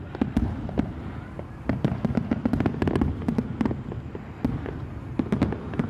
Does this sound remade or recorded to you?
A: recorded